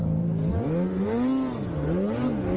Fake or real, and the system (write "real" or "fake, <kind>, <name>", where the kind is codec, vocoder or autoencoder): real